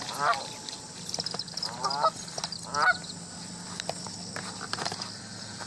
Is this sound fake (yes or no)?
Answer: no